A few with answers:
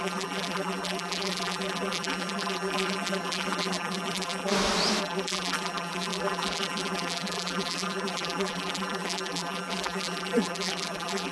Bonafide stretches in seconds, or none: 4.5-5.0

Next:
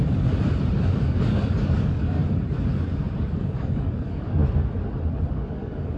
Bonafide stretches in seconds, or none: 0.0-0.8; 2.2-3.3; 4.4-5.3

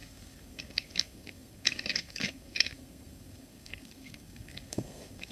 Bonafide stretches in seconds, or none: none

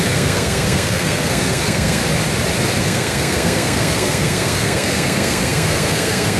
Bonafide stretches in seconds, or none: 2.0-2.8

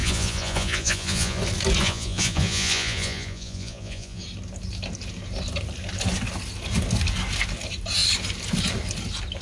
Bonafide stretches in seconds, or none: 1.4-1.8; 4.2-9.4

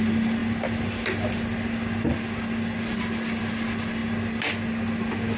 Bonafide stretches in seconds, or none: 0.0-5.4

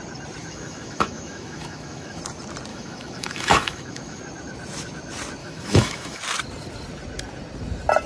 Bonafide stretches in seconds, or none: 0.0-0.4; 2.2-2.7; 4.2-5.4; 6.2-8.1